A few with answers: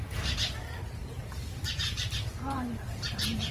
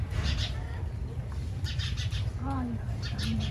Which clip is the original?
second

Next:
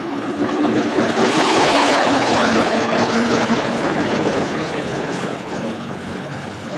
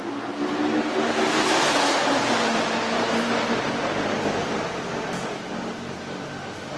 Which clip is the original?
second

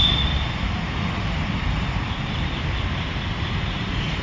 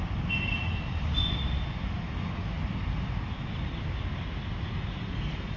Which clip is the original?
second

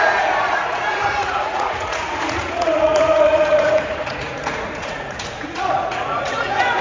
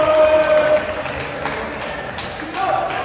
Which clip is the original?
second